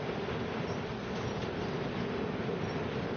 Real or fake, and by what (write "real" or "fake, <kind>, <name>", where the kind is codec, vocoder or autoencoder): real